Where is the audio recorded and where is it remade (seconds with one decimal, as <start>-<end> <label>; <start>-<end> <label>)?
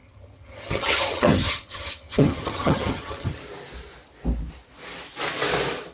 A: 0.0-3.4 remade; 3.4-5.9 recorded